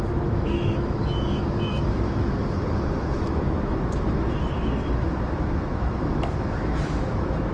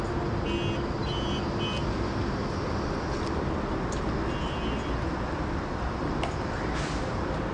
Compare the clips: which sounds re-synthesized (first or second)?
first